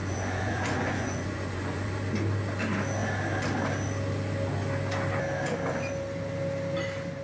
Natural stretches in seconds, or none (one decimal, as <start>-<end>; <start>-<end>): 1.9-7.2